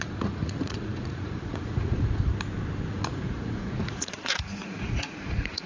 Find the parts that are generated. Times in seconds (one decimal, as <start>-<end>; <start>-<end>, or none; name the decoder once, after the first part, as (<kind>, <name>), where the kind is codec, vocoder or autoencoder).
0.0-2.3 (vocoder, Vocos); 2.9-5.7